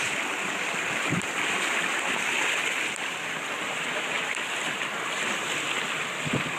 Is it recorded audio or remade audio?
recorded